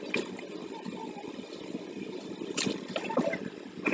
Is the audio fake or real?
real